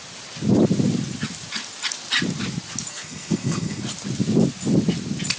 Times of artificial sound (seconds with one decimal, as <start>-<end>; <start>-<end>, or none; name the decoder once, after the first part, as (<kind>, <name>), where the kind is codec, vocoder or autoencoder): 2.9-3.8 (codec, SNAC)